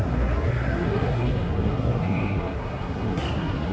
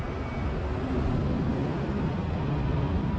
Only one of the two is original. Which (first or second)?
second